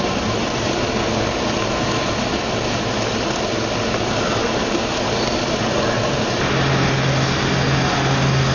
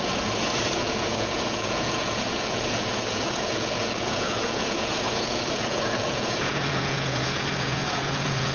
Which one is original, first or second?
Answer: first